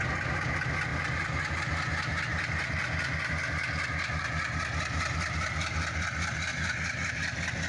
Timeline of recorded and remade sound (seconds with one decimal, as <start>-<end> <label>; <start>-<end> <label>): 0.0-2.3 recorded; 2.3-3.3 remade; 3.3-6.5 recorded; 6.5-7.1 remade; 7.1-7.7 recorded